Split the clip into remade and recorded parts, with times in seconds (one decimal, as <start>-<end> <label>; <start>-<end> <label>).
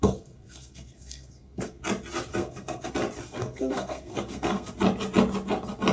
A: 0.0-1.8 remade; 1.8-2.3 recorded; 2.3-2.9 remade; 2.9-3.3 recorded; 3.3-4.7 remade; 4.7-5.9 recorded